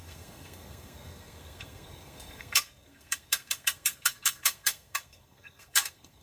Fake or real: fake